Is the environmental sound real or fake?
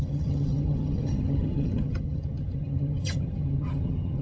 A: fake